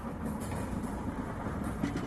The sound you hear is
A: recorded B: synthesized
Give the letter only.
B